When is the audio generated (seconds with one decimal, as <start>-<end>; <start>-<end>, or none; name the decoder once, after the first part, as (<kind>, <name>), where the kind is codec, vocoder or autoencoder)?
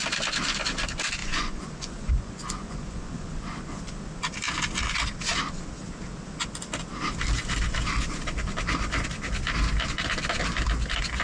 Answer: 1.2-3.8 (vocoder, Vocos)